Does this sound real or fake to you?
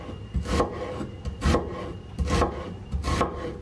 real